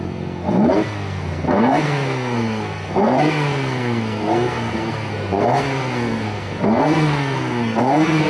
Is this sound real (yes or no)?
no